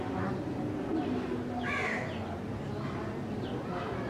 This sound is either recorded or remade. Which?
recorded